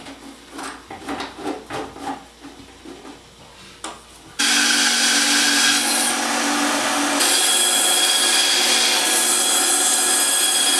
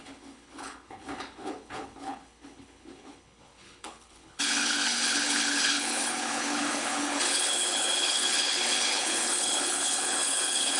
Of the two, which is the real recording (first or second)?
first